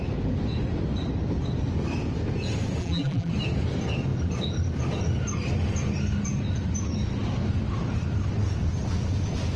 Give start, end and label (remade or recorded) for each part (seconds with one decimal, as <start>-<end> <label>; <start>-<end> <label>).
0.0-2.8 recorded; 2.8-3.3 remade; 3.3-9.6 recorded

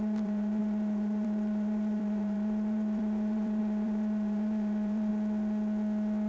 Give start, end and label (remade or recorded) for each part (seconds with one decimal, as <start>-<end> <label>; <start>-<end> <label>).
0.0-5.1 remade; 5.1-6.3 recorded

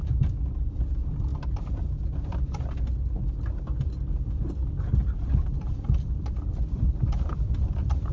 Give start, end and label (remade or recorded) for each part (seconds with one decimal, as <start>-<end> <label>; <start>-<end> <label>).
0.0-1.3 remade; 1.3-4.8 recorded; 4.8-8.1 remade

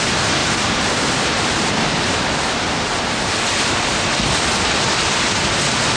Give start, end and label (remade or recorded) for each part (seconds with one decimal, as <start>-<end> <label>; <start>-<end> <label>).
0.0-0.4 recorded; 0.4-3.0 remade; 3.0-6.0 recorded